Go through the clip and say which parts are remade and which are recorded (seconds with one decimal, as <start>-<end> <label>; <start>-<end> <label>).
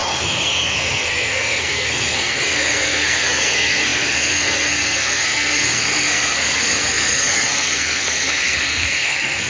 0.0-9.5 remade